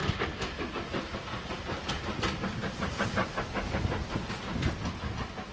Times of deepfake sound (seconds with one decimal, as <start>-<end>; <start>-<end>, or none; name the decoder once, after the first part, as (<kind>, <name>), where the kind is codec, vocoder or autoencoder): none